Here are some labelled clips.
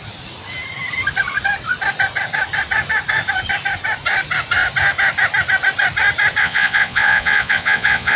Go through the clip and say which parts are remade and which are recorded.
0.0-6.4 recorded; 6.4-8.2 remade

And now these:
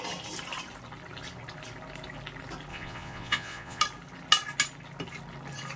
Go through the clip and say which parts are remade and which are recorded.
0.0-2.7 recorded; 2.7-3.8 remade; 3.8-5.8 recorded

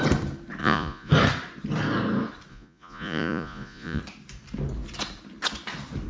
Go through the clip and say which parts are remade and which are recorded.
0.0-0.6 recorded; 0.6-1.1 remade; 1.1-2.5 recorded; 2.5-4.0 remade; 4.0-6.1 recorded

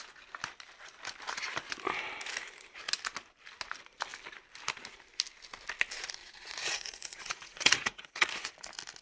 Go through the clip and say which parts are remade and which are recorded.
0.0-6.2 recorded; 6.2-8.5 remade; 8.5-9.0 recorded